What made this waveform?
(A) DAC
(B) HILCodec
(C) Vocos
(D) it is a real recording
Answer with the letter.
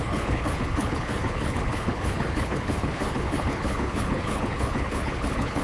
B